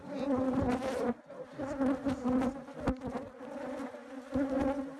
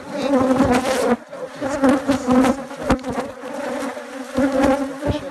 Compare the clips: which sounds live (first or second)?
first